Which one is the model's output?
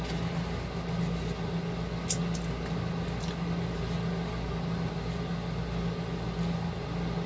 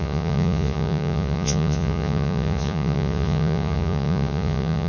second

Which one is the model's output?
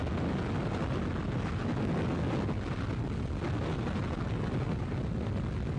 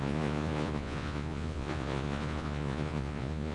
second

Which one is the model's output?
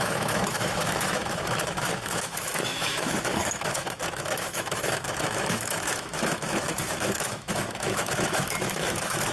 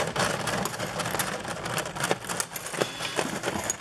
first